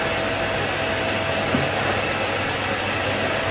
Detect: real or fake real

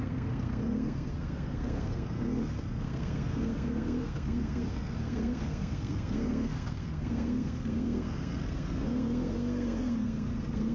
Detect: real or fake fake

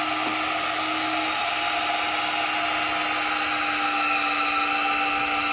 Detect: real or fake real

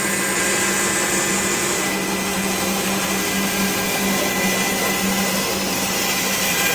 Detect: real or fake real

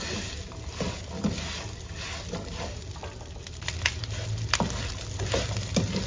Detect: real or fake real